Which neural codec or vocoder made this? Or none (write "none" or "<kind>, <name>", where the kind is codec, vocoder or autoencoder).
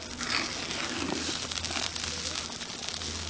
none